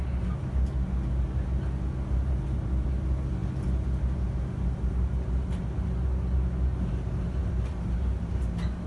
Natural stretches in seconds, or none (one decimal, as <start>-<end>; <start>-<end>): 0.0-8.9